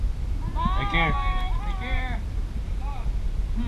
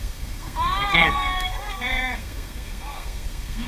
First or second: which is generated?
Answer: second